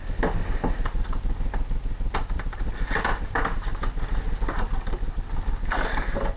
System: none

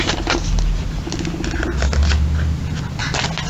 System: none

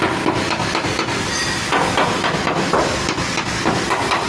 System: none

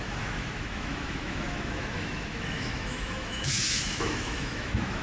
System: autoencoder, DAC-VAE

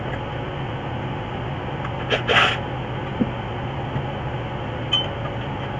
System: none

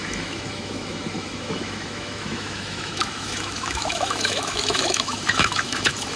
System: autoencoder, DAC-VAE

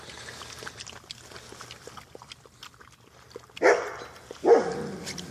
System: none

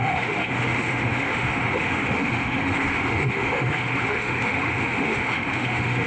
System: autoencoder, DAC-VAE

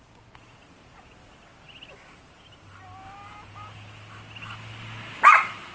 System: none